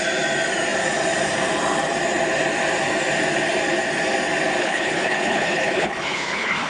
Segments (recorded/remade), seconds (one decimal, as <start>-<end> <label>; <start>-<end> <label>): 0.0-4.6 recorded; 4.6-6.7 remade